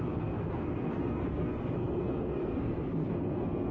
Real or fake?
fake